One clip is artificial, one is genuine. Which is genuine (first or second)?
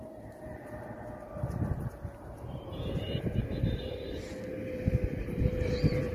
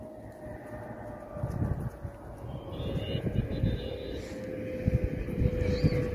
second